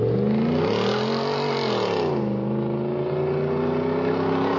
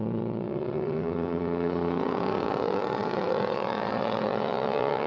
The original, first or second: first